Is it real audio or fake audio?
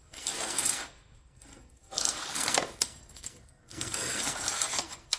fake